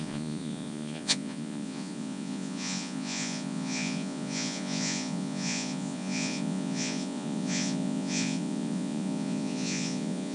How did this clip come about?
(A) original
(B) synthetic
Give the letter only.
B